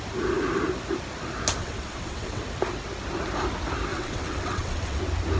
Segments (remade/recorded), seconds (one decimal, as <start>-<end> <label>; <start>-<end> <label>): 0.0-1.6 recorded; 1.6-2.4 remade; 2.4-3.9 recorded; 3.9-5.0 remade; 5.0-5.4 recorded